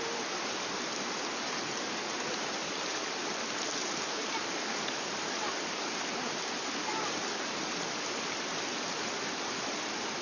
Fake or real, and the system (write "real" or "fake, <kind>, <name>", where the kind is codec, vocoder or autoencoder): real